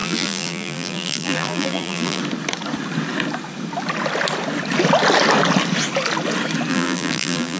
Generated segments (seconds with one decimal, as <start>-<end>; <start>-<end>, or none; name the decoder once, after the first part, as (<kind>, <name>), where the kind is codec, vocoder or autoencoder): 0.0-2.2 (vocoder, BigVGAN v2); 6.7-7.6